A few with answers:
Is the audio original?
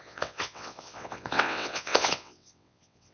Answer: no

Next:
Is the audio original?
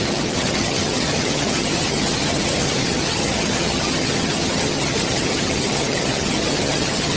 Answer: no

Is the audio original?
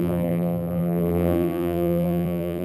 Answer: no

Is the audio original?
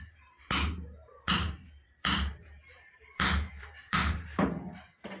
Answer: no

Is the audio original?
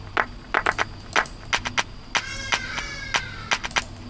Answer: yes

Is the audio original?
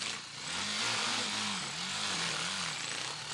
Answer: yes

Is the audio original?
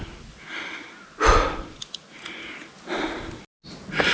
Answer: yes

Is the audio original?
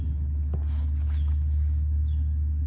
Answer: yes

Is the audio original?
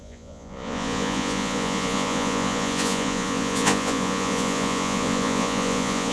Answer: no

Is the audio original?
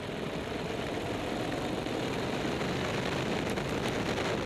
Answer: yes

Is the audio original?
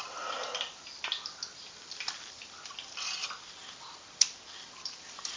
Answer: yes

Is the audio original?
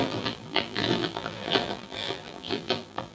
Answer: no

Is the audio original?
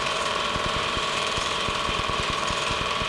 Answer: no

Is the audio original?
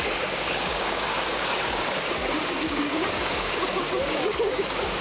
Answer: no